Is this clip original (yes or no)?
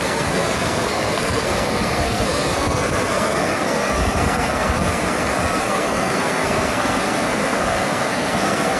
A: no